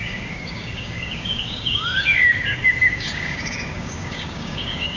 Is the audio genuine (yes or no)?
no